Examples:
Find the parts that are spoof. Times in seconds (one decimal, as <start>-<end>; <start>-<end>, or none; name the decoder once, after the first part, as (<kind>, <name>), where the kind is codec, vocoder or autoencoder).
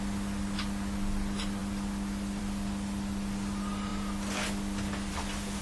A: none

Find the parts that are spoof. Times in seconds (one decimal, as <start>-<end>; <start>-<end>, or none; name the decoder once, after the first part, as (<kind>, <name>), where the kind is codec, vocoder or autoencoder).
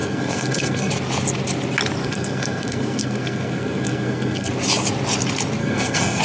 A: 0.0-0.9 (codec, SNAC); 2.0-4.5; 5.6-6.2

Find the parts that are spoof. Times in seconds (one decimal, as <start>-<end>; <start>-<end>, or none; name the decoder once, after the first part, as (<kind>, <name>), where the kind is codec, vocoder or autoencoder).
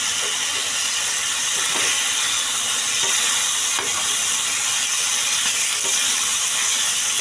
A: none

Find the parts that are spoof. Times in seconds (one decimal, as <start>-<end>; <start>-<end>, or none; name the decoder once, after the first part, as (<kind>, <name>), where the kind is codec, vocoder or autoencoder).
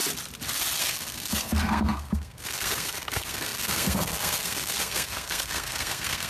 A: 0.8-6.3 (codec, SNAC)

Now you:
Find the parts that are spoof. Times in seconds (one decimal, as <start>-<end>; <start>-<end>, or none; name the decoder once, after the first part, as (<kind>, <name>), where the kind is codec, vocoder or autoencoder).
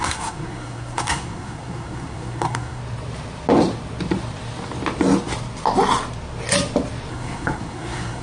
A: 0.0-2.8 (codec, SNAC); 7.1-8.2